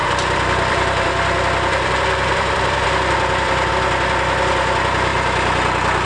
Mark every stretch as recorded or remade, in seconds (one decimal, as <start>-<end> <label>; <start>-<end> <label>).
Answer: 0.0-3.7 remade; 3.7-6.1 recorded